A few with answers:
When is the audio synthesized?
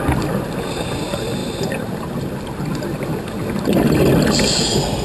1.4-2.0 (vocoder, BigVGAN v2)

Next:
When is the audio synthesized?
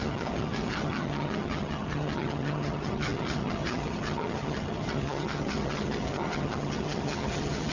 0.0-7.7 (vocoder, HiFi-GAN)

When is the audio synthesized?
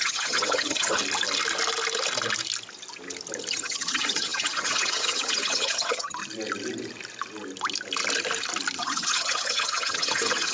0.0-1.0 (vocoder, HiFi-GAN); 3.5-6.2; 8.8-10.5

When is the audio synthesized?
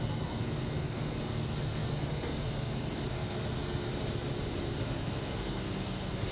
0.0-3.9 (codec, SNAC); 4.8-6.3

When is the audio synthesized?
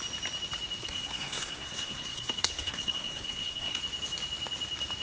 0.8-3.8 (codec, SNAC)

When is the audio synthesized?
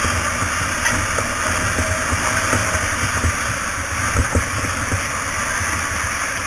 2.6-4.4 (vocoder, BigVGAN v2)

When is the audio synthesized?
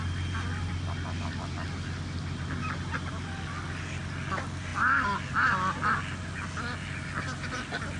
none